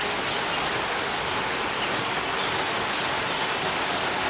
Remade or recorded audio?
recorded